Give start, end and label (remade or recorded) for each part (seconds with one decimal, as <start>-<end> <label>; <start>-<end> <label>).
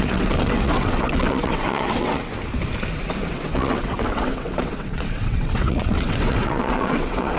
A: 0.0-2.2 remade; 2.2-3.3 recorded; 3.3-7.4 remade